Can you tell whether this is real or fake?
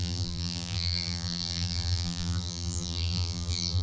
fake